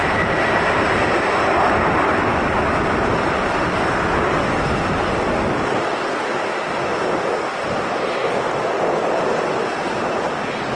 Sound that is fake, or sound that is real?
real